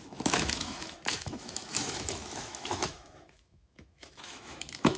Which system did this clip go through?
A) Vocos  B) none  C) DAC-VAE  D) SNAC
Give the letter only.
C